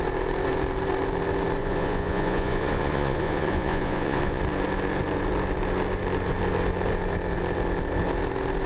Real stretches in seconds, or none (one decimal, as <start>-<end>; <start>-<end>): 0.0-1.6; 4.4-8.7